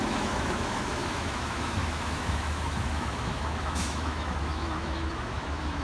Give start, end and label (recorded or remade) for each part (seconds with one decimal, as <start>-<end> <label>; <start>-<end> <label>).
0.0-5.8 remade